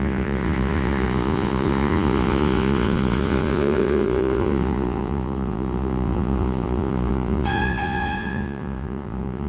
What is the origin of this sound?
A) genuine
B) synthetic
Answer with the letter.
B